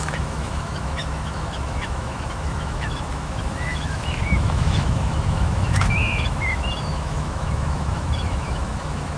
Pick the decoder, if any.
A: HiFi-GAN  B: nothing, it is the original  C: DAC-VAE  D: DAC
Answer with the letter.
C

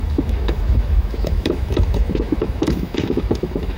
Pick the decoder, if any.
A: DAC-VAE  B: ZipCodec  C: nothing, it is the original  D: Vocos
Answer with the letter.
A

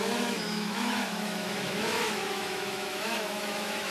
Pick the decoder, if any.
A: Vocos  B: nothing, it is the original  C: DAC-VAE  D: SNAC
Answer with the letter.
C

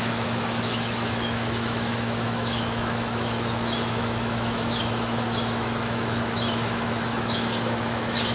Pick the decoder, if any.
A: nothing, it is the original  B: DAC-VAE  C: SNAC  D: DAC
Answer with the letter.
B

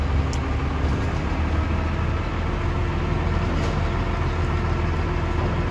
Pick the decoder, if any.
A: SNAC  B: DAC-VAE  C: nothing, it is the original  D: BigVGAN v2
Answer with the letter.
C